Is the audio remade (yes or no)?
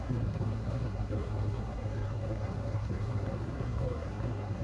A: yes